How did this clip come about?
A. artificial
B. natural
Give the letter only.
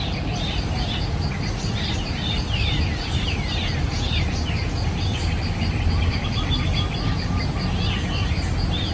A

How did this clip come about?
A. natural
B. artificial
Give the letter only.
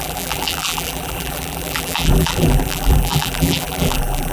B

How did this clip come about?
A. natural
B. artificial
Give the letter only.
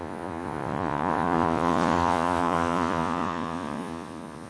B